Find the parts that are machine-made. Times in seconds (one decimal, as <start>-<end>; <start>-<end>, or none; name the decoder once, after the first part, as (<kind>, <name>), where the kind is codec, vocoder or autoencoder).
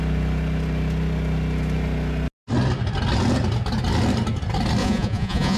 4.8-5.6 (vocoder, Vocos)